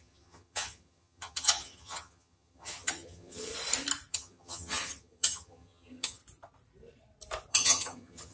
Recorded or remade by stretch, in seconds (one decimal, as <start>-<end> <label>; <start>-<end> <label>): 0.0-3.5 remade; 3.5-4.1 recorded; 4.1-6.2 remade; 6.2-7.5 recorded; 7.5-8.3 remade